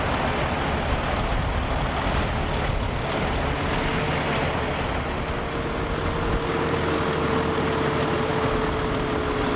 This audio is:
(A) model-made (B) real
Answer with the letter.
B